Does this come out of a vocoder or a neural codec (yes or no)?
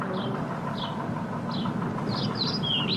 no